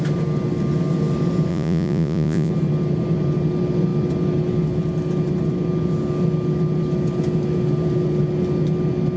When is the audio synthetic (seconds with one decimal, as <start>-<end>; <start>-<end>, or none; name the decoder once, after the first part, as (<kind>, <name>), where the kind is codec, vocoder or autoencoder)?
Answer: 1.5-2.5 (vocoder, Vocos)